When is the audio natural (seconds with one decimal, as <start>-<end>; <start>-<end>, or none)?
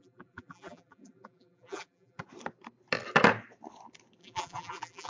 2.2-4.2